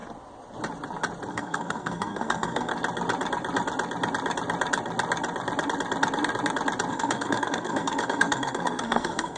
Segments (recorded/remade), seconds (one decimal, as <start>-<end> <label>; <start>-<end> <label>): 0.0-1.3 recorded; 1.3-2.7 remade; 2.7-6.9 recorded; 6.9-9.4 remade